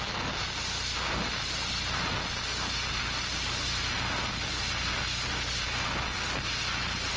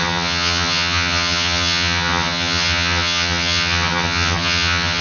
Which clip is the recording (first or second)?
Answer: first